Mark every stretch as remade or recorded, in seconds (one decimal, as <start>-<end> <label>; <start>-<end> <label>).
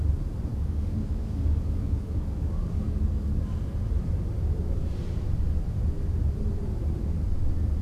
0.0-0.5 recorded; 0.5-3.4 remade; 3.4-7.8 recorded